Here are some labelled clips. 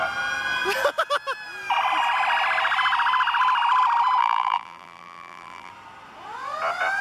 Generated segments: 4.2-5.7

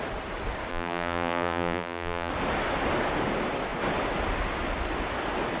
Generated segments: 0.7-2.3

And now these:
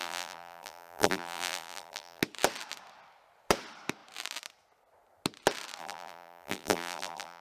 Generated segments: 0.0-2.2; 5.8-7.4

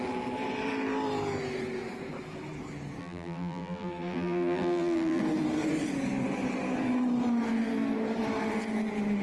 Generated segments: 3.0-5.2

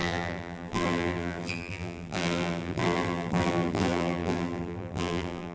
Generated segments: 0.0-5.5

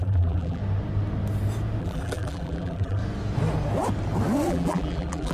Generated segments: 0.0-0.6; 1.8-3.0; 4.5-5.3